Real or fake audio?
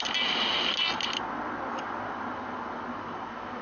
real